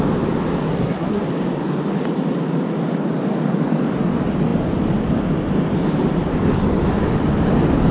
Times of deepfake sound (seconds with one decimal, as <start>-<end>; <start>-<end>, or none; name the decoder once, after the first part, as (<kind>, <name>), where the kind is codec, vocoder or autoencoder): 0.7-1.2 (codec, SNAC)